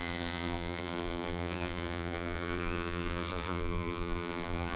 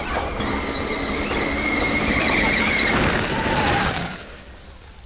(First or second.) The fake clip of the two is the first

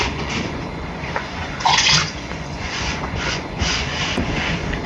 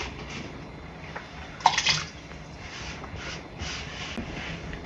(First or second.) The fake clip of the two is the first